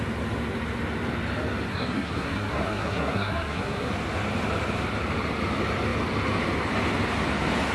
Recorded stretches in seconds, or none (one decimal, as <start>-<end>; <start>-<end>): 0.0-1.7; 3.9-7.7